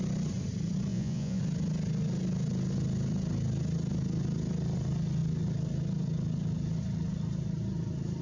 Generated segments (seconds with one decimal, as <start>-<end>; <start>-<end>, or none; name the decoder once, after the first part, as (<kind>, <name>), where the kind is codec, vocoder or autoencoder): 0.9-1.4 (vocoder, Vocos)